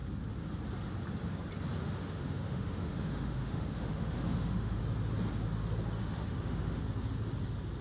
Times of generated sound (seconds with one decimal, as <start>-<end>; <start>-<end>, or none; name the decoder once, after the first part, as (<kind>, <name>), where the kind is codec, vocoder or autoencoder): 1.8-4.8 (autoencoder, DAC-VAE); 6.0-6.8